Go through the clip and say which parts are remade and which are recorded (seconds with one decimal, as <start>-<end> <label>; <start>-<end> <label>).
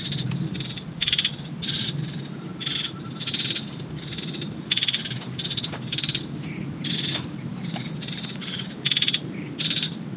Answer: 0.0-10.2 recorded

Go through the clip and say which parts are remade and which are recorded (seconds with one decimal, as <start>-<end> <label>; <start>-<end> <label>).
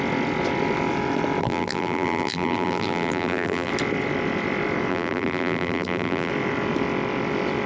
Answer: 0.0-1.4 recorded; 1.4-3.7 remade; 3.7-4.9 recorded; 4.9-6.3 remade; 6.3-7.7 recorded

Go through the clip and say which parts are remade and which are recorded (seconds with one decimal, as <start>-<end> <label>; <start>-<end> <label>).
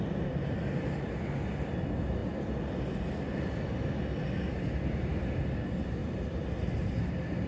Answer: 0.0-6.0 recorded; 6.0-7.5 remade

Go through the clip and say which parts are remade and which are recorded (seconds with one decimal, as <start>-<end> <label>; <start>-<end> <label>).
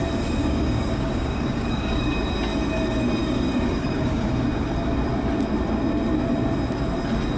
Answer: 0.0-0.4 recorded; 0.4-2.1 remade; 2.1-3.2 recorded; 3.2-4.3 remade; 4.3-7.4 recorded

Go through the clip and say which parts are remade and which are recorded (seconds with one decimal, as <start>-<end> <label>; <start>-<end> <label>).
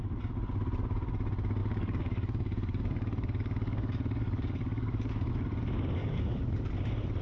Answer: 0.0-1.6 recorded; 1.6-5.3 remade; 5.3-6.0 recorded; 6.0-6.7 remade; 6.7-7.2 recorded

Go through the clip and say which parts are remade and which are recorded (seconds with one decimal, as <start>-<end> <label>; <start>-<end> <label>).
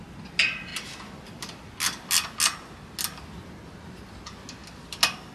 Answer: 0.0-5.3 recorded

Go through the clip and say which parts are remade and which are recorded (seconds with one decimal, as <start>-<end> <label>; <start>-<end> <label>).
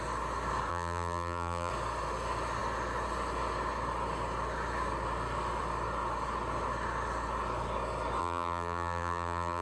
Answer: 0.0-0.7 recorded; 0.7-1.7 remade; 1.7-8.2 recorded; 8.2-9.6 remade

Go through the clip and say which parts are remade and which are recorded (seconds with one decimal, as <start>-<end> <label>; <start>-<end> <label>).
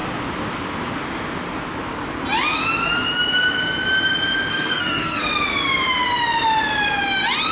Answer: 0.0-4.5 recorded; 4.5-5.3 remade; 5.3-7.5 recorded